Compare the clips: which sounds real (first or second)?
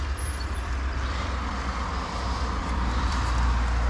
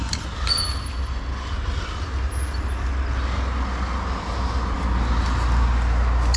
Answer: second